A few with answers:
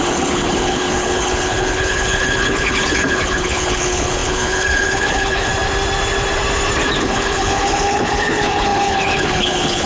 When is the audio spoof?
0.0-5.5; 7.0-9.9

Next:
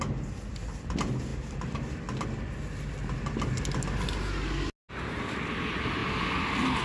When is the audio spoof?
none